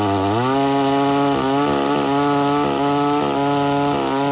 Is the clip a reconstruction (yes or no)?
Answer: no